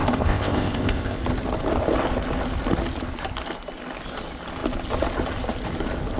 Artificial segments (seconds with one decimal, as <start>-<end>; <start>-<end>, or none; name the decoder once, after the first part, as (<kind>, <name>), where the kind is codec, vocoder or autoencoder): 0.0-1.2 (codec, ZipCodec)